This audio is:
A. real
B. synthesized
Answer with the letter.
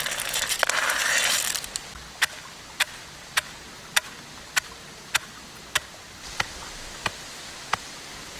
A